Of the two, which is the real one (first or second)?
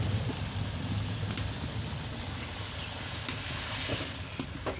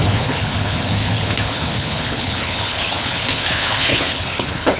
first